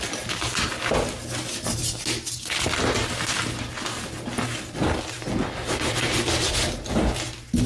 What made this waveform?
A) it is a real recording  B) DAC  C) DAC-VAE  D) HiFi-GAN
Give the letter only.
A